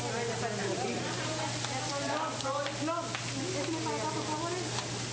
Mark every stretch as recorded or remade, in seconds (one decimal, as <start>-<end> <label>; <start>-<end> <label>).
0.0-0.6 recorded; 0.6-1.4 remade; 1.4-5.1 recorded